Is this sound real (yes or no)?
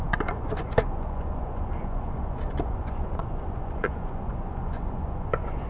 no